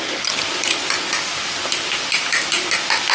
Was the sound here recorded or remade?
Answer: recorded